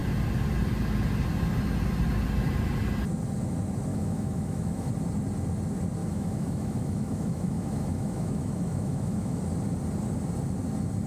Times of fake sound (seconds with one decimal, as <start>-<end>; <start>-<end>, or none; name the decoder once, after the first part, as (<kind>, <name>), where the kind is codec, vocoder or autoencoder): 3.9-4.9 (autoencoder, DAC-VAE); 6.0-9.4